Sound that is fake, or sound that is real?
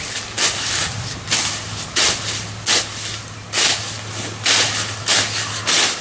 real